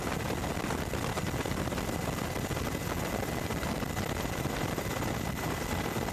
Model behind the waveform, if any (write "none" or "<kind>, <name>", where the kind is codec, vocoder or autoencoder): none